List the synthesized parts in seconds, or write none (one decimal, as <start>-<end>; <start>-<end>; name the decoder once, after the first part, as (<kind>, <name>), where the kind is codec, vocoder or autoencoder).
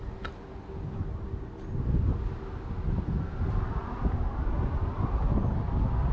none